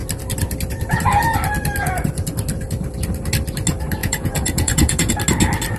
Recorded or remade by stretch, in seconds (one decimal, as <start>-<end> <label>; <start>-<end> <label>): 0.0-4.0 recorded; 4.0-5.1 remade; 5.1-5.8 recorded